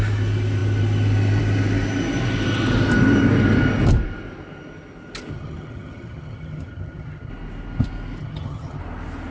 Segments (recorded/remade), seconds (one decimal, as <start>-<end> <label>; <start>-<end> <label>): 0.0-5.3 recorded; 5.3-7.3 remade; 7.3-8.2 recorded; 8.2-8.8 remade; 8.8-9.3 recorded